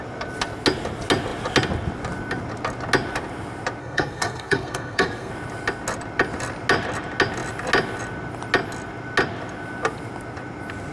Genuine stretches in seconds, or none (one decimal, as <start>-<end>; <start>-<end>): 0.0-3.8; 5.3-10.9